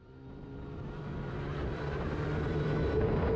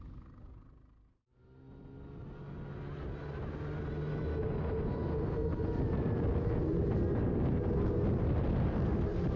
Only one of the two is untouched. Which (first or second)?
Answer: second